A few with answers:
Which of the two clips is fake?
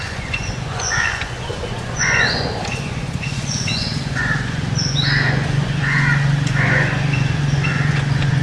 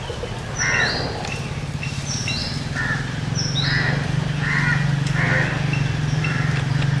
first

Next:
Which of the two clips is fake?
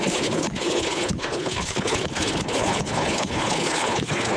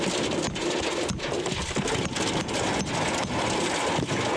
first